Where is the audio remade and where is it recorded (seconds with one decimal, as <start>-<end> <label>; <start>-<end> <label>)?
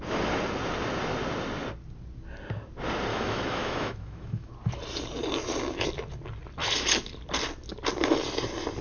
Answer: 0.0-3.1 recorded; 3.1-4.5 remade; 4.5-8.8 recorded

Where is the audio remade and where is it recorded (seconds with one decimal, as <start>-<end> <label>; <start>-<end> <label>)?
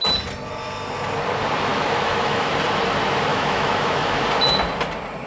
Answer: 0.0-1.7 recorded; 1.7-2.5 remade; 2.5-3.3 recorded; 3.3-4.2 remade; 4.2-5.3 recorded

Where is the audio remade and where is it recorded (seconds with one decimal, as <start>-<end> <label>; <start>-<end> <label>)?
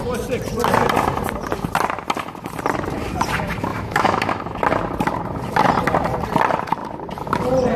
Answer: 0.0-3.7 recorded; 3.7-4.4 remade; 4.4-7.8 recorded